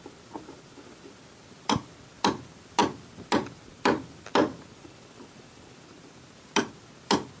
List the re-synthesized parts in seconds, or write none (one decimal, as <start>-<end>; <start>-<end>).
none